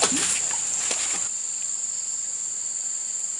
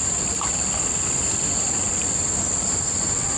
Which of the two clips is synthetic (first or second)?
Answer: second